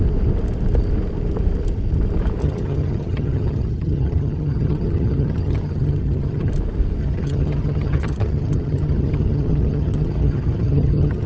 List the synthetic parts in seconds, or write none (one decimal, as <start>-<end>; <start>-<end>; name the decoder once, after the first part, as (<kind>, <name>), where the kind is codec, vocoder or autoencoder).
2.4-6.5 (vocoder, HiFi-GAN); 7.0-11.3

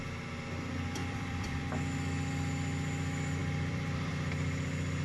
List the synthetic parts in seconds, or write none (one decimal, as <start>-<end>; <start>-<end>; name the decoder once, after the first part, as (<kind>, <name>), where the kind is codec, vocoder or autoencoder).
1.0-1.6 (vocoder, BigVGAN v2); 3.4-4.1

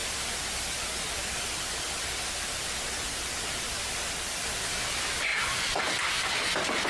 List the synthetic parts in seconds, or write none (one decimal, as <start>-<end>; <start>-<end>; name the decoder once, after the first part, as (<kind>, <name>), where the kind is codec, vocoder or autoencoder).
0.0-4.1 (vocoder, BigVGAN v2); 5.3-5.8

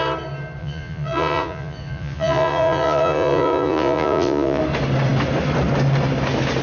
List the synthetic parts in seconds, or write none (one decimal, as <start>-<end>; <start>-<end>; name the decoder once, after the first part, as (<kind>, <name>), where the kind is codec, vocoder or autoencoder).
0.6-4.6 (vocoder, Vocos)

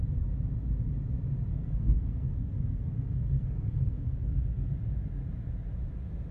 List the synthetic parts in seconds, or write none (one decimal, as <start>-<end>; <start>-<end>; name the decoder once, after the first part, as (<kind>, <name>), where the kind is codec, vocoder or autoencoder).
1.5-4.7 (codec, SNAC)

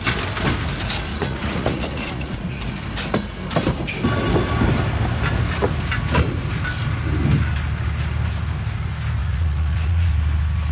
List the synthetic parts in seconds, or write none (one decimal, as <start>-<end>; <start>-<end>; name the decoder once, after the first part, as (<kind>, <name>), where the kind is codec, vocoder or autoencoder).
1.1-2.6 (vocoder, Vocos); 9.2-10.1

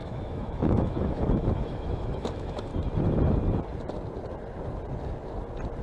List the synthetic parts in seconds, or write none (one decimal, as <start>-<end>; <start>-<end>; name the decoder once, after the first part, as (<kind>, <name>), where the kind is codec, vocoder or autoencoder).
0.0-2.7 (autoencoder, DAC-VAE)